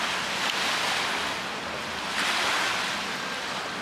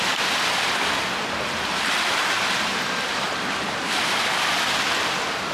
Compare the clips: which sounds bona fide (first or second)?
first